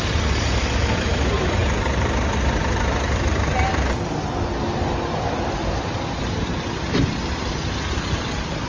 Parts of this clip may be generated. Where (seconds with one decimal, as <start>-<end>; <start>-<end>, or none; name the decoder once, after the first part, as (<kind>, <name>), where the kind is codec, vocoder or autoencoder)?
none